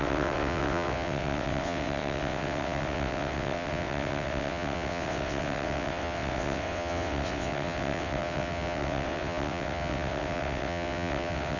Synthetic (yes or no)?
yes